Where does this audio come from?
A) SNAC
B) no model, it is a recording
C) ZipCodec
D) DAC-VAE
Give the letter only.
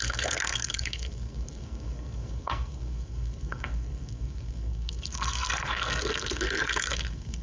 A